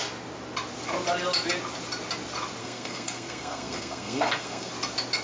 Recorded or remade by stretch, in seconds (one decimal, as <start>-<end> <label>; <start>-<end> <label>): 0.0-2.6 recorded; 2.6-4.7 remade; 4.7-5.2 recorded